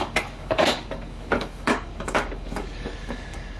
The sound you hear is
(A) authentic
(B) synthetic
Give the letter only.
B